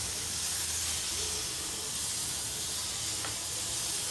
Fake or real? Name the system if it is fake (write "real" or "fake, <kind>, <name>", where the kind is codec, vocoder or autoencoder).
real